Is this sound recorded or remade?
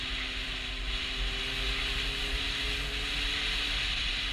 recorded